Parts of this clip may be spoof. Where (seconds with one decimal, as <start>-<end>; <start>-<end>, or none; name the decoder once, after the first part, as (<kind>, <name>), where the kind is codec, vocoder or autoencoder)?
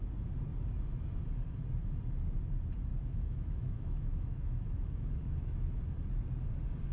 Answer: 2.9-5.8 (autoencoder, DAC-VAE)